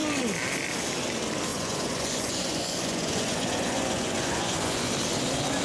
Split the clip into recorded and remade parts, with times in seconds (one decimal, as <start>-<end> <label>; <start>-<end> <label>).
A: 0.0-1.5 recorded; 1.5-4.9 remade; 4.9-5.6 recorded